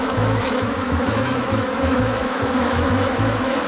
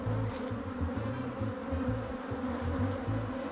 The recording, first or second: second